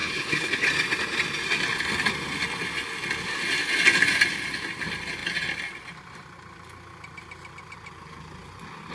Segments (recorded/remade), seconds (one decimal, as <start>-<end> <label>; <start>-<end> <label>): 0.0-0.7 remade; 0.7-8.9 recorded